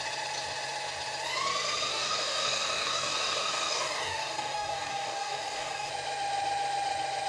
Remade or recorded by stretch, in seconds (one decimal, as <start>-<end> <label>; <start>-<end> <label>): 0.0-1.9 recorded; 1.9-5.9 remade; 5.9-7.3 recorded